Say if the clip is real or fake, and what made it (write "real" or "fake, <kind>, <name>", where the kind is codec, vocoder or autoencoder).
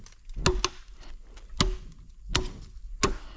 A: real